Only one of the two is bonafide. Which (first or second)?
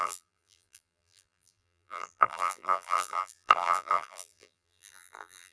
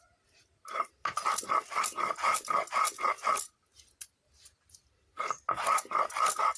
second